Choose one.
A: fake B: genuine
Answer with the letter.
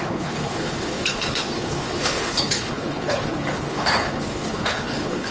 A